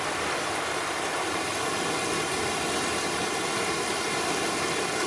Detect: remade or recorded recorded